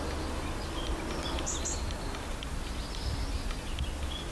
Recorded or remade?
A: recorded